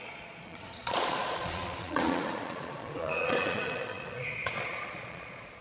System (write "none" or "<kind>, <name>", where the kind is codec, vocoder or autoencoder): vocoder, Vocos